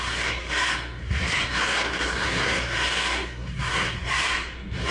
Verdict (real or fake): fake